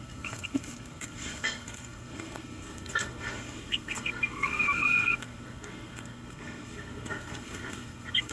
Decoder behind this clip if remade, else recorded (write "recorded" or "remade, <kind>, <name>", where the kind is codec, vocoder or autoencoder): remade, codec, SNAC